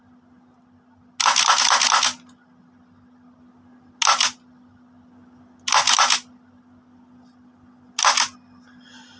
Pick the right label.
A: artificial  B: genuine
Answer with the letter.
B